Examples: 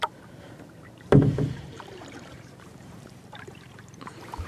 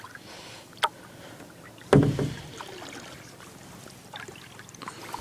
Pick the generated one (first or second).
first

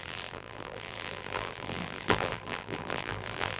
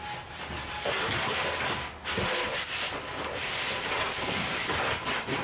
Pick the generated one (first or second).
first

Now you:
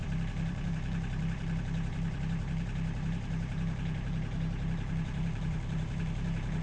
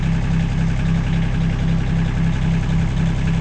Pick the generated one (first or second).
first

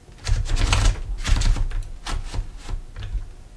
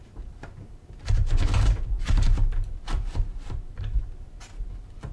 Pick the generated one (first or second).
second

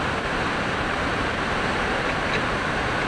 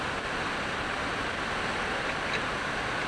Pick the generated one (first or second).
first